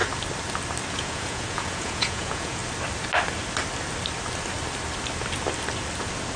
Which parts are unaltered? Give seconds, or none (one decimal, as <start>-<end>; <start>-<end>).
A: 0.0-0.9; 2.6-6.4